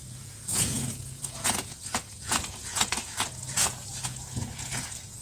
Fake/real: fake